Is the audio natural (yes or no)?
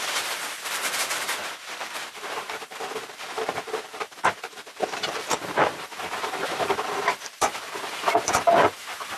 no